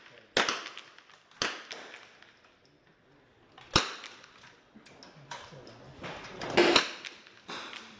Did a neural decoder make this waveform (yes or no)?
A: no